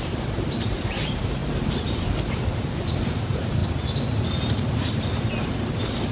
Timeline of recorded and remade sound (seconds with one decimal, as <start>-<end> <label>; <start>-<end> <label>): 0.0-1.4 remade; 1.4-2.3 recorded; 2.3-3.6 remade; 3.6-6.1 recorded